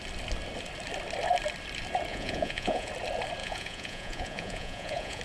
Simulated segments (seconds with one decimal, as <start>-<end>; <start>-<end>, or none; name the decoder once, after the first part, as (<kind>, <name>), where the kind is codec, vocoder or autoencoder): 2.1-2.9 (vocoder, Vocos); 3.4-5.2